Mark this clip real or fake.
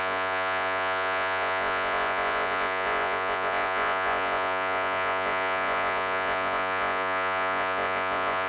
fake